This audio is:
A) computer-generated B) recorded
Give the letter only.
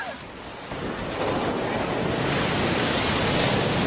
B